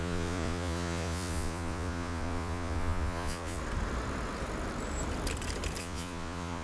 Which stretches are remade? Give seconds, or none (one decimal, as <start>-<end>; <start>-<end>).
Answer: 0.0-3.6; 5.8-6.6